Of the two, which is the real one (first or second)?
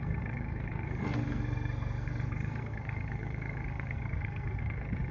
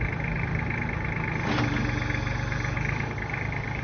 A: second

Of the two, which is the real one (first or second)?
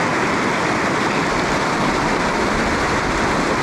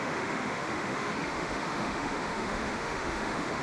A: first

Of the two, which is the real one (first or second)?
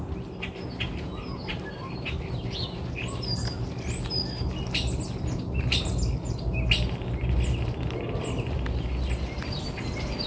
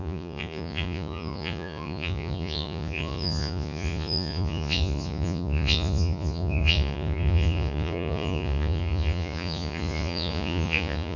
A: first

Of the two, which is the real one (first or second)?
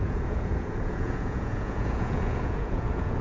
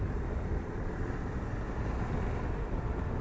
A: second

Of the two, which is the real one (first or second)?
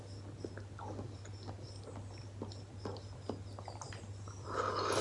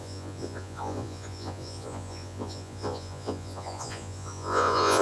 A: first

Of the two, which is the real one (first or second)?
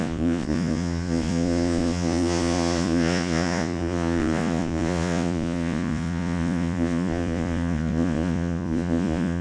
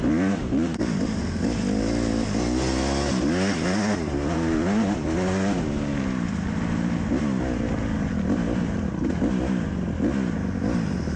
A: second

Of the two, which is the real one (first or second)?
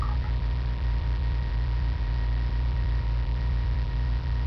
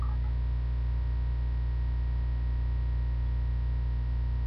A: second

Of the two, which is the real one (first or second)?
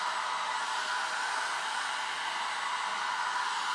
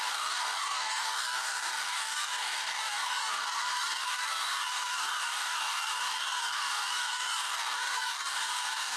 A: first